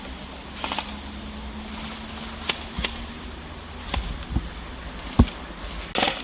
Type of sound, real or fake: real